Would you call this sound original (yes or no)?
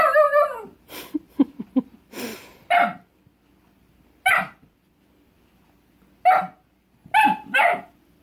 yes